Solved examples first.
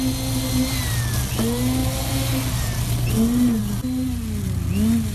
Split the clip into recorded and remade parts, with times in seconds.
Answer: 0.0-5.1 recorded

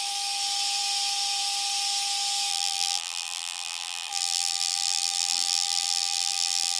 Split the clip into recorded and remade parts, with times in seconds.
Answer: 0.0-2.5 recorded; 2.5-6.8 remade

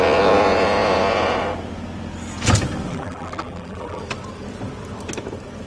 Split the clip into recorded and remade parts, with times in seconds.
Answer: 0.0-2.9 recorded; 2.9-4.0 remade; 4.0-5.7 recorded

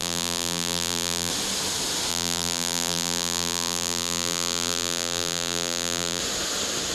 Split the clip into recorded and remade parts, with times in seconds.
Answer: 0.0-1.3 remade; 1.3-2.1 recorded; 2.1-6.2 remade; 6.2-6.9 recorded

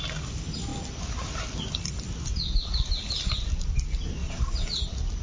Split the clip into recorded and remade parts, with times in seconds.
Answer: 0.0-0.7 recorded; 0.7-3.8 remade; 3.8-5.2 recorded